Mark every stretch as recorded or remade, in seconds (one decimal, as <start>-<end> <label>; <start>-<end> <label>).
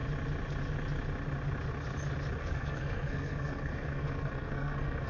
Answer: 0.0-2.4 recorded; 2.4-5.1 remade